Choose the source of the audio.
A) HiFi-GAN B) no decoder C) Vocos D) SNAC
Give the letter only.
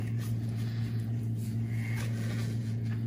C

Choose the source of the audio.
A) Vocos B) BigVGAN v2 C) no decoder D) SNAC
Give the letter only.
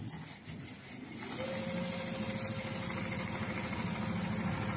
C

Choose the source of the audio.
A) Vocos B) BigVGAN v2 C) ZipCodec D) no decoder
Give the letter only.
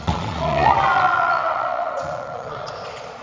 A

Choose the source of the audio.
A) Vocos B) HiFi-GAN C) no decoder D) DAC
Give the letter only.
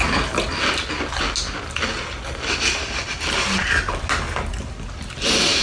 C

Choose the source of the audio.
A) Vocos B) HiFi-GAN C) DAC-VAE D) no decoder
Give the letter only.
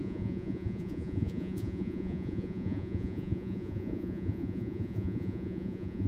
A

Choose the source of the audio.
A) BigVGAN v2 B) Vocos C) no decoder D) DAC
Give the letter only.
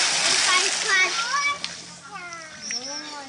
C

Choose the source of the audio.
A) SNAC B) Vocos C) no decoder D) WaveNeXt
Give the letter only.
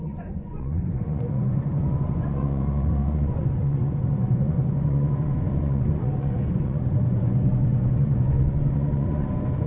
B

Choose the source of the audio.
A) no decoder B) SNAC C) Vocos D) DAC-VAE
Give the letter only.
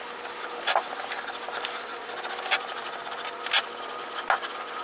A